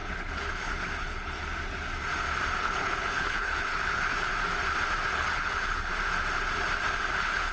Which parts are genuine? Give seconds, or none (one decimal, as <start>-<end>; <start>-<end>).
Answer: 1.4-2.6; 4.3-5.1; 5.9-7.1